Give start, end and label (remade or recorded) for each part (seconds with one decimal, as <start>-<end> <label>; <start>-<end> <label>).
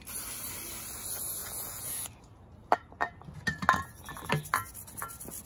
0.0-1.4 recorded; 1.4-2.1 remade; 2.1-5.5 recorded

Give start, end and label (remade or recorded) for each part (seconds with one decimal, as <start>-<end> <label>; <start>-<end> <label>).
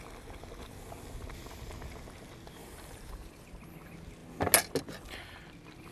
0.0-2.6 recorded; 2.6-3.6 remade; 3.6-5.9 recorded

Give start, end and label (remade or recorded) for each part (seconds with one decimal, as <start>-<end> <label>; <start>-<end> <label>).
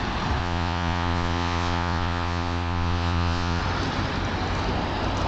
0.0-0.4 recorded; 0.4-3.6 remade; 3.6-5.3 recorded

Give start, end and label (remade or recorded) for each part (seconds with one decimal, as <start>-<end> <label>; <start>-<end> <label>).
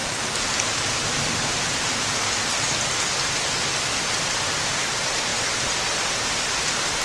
0.0-7.0 recorded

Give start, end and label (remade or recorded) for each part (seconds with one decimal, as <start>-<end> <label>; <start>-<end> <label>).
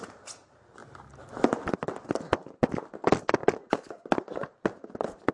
0.0-5.3 recorded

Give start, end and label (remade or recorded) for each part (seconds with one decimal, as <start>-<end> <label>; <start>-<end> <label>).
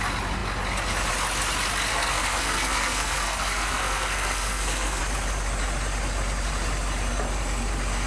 0.0-1.9 recorded; 1.9-5.0 remade; 5.0-8.1 recorded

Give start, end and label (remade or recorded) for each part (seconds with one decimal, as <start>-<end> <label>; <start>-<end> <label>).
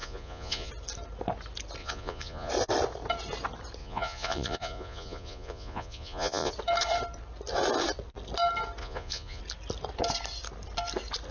0.0-0.7 remade; 0.7-1.8 recorded; 1.8-2.5 remade; 2.5-3.8 recorded; 3.8-6.5 remade; 6.5-8.8 recorded; 8.8-9.4 remade; 9.4-11.3 recorded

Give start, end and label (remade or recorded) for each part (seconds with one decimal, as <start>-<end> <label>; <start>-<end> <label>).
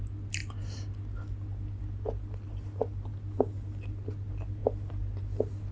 0.0-5.7 recorded